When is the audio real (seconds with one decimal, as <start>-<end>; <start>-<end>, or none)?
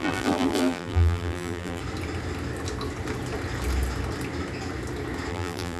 1.8-5.3